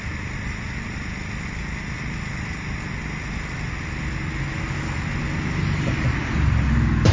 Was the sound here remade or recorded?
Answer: recorded